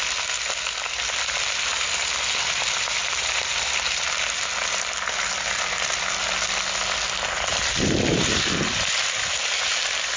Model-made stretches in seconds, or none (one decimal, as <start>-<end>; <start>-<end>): 3.0-4.0